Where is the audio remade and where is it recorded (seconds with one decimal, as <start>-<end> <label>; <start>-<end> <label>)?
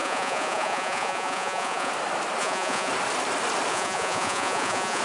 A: 0.0-1.9 remade; 1.9-2.4 recorded; 2.4-2.9 remade; 2.9-3.7 recorded; 3.7-5.0 remade